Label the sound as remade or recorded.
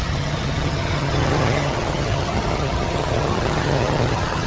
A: remade